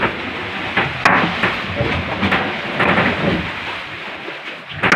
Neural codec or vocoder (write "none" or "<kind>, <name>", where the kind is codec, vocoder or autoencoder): none